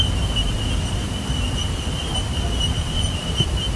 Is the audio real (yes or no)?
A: no